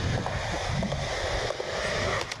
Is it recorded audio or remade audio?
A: recorded